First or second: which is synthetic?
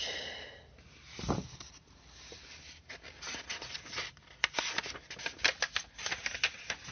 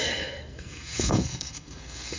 second